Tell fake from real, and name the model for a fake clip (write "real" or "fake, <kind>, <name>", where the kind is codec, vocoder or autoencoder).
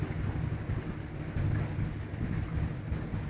real